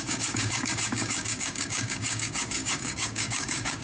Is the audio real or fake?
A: fake